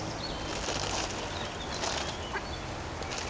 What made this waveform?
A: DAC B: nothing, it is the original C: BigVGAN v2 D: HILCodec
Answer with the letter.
B